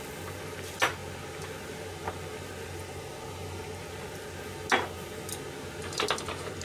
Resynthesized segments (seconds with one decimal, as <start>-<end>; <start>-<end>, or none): none